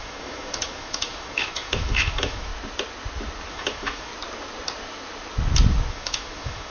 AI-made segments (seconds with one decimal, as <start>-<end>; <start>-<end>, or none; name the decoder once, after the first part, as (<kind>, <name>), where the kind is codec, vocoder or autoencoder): 0.0-2.5 (autoencoder, DAC-VAE); 3.5-4.1; 5.9-6.7